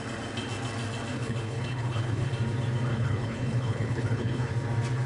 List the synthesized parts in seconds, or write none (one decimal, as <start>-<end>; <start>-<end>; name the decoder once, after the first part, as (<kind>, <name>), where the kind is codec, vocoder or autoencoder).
1.1-2.3 (codec, HILCodec); 2.9-4.5